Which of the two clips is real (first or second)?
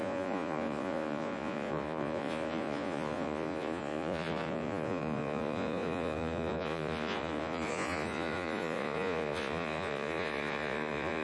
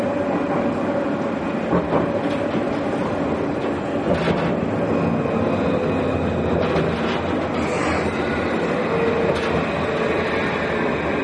second